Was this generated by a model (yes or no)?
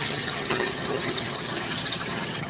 yes